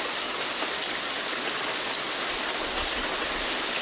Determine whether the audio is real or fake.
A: real